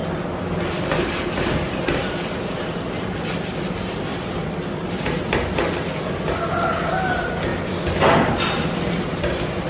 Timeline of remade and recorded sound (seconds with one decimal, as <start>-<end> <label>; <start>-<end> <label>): 0.0-4.1 recorded; 4.1-5.3 remade; 5.3-9.7 recorded